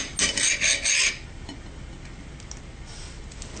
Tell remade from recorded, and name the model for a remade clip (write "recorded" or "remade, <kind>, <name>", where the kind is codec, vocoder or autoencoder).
recorded